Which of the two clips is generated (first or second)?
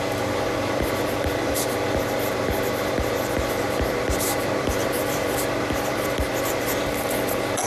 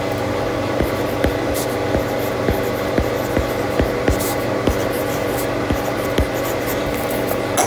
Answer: first